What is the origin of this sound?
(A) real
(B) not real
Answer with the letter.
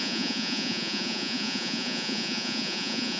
B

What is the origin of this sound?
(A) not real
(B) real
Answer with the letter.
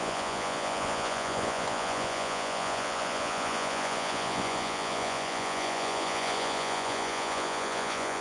A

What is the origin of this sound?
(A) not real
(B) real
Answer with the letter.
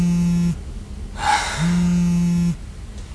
B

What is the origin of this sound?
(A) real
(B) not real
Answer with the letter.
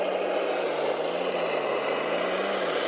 A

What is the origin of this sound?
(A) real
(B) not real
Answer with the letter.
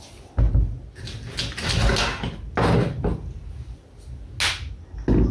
A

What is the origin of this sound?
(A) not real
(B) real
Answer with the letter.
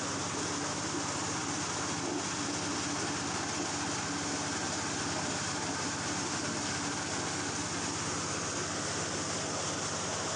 B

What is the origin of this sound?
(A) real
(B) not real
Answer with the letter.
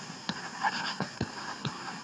B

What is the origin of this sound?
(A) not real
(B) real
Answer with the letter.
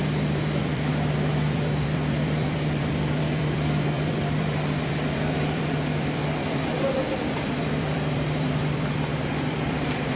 A